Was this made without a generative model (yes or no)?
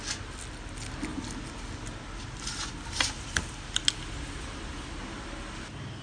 yes